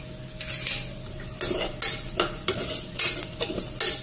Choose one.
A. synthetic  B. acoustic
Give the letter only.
B